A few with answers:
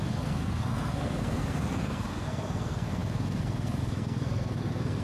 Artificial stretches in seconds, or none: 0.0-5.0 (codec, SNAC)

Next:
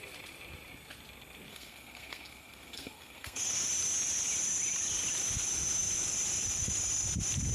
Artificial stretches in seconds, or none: 1.5-3.5 (codec, SNAC)

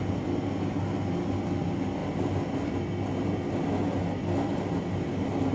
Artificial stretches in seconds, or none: none

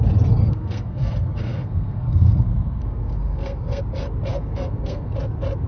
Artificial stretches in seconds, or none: 0.4-3.8 (codec, SNAC); 4.3-5.1

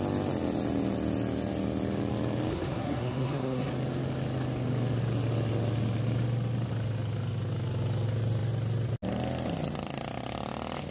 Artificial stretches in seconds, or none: 2.5-3.7 (codec, SNAC)

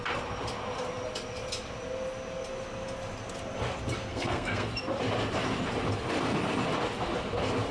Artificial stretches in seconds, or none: 4.1-4.7 (codec, SNAC)

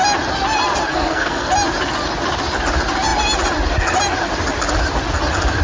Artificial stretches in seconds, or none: 0.9-1.5 (codec, SNAC)

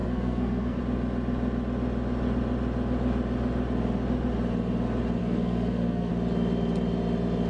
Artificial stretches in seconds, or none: 0.0-0.8 (codec, SNAC); 5.2-6.1